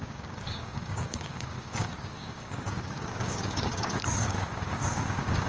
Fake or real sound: fake